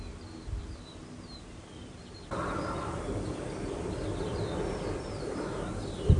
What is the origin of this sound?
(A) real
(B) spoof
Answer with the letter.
A